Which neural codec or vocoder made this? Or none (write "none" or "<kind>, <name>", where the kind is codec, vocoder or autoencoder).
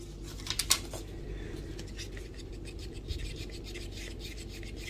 none